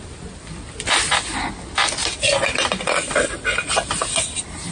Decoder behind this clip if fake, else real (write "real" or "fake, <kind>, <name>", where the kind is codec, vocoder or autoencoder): real